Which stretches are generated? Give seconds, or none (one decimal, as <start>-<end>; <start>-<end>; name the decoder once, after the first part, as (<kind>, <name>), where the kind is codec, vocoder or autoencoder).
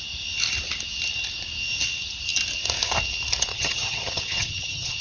3.5-5.0 (vocoder, HiFi-GAN)